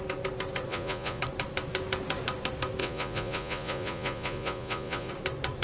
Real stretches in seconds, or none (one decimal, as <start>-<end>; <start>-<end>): 0.0-0.7; 1.2-2.8; 5.1-5.6